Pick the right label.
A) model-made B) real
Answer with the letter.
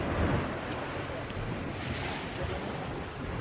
B